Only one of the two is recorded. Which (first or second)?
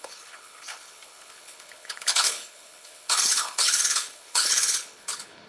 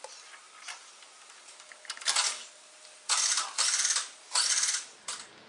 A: second